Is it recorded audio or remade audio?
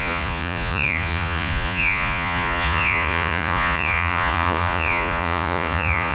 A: remade